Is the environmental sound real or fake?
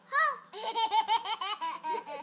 fake